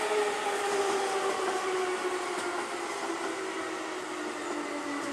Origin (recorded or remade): recorded